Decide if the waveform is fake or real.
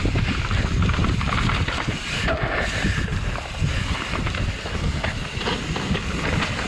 real